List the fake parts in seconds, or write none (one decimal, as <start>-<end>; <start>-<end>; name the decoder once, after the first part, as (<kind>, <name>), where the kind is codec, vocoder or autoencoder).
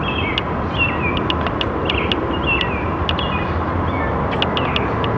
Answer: none